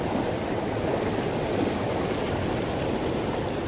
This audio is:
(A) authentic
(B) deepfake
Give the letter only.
A